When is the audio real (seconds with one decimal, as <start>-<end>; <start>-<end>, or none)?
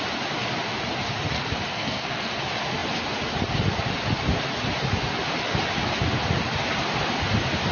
0.0-1.7; 2.3-7.7